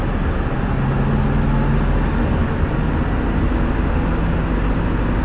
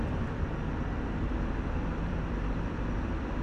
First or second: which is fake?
second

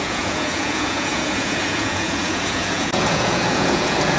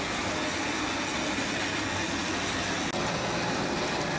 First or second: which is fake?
first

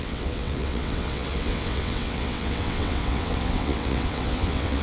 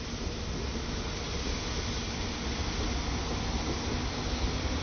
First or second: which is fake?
first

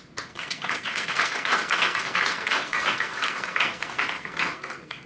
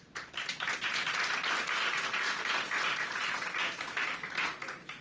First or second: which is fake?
first